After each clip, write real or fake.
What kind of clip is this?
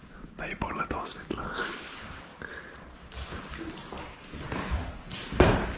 real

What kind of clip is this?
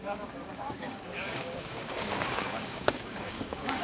fake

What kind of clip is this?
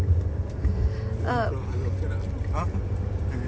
real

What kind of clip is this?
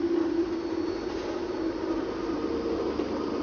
real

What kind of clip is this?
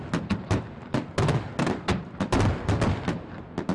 real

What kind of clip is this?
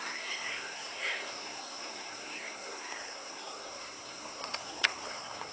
fake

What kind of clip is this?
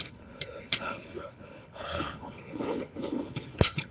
fake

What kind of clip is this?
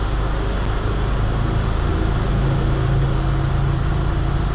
real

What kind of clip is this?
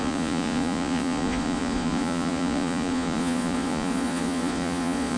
fake